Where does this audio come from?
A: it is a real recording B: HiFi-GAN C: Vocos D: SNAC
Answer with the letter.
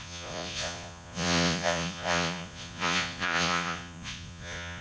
C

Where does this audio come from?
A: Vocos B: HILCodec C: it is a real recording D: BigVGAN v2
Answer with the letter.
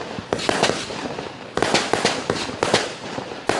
C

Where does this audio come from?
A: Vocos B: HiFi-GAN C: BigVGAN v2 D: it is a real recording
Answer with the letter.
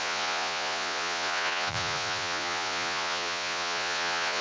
A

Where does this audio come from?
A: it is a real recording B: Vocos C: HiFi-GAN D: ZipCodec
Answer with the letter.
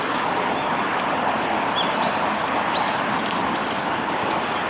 A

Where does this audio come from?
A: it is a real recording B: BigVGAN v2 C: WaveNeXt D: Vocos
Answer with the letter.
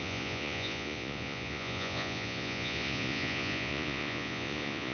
D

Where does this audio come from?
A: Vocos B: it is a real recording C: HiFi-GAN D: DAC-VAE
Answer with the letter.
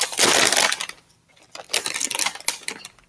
B